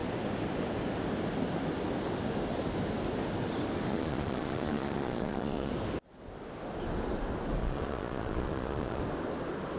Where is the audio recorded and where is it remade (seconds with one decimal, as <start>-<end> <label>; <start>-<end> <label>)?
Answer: 0.0-3.9 recorded; 3.9-5.7 remade; 5.7-7.6 recorded; 7.6-9.0 remade; 9.0-9.8 recorded